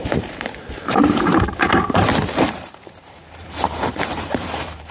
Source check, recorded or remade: remade